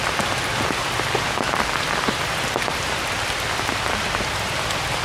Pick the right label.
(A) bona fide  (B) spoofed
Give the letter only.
B